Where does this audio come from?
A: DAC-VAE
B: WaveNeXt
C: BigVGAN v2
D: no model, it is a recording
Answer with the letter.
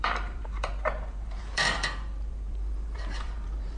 C